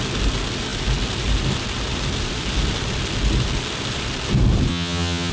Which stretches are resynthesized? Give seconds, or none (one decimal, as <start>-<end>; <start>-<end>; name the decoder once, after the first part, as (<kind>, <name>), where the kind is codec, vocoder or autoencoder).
4.7-5.3 (vocoder, HiFi-GAN)